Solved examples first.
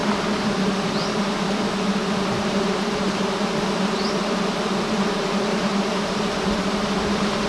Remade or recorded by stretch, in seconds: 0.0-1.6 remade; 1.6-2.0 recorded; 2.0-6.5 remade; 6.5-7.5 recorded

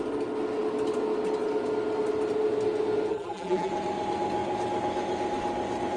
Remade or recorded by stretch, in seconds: 0.0-3.1 recorded; 3.1-3.7 remade; 3.7-6.0 recorded